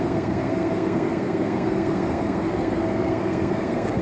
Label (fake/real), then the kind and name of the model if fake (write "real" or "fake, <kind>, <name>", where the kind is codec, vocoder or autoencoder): fake, codec, SNAC